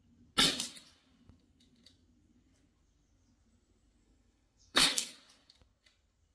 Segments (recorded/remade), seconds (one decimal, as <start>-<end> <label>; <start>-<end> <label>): 0.0-4.0 recorded; 4.0-5.1 remade; 5.1-6.3 recorded